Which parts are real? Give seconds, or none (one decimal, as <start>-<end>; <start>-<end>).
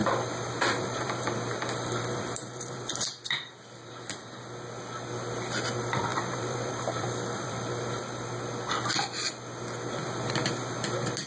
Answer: 4.4-6.1; 7.7-11.3